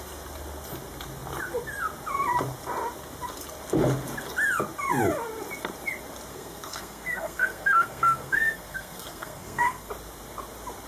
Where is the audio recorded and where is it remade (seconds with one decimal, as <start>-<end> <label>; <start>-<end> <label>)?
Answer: 0.0-6.3 recorded; 6.3-9.9 remade; 9.9-10.9 recorded